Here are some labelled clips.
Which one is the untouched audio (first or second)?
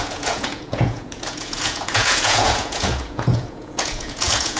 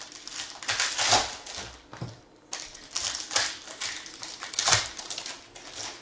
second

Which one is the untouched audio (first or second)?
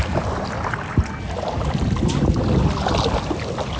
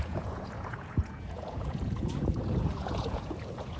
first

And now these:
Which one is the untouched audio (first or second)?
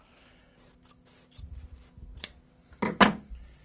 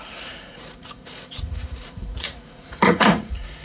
first